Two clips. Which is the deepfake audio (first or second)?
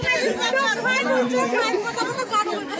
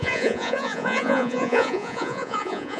second